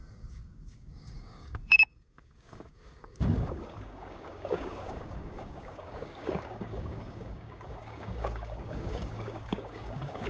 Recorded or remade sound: remade